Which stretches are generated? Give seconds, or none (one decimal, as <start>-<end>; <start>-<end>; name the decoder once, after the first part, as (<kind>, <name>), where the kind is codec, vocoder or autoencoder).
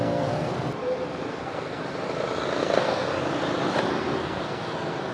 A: 0.0-0.5 (codec, SNAC); 1.3-1.8; 2.6-3.1; 3.9-5.1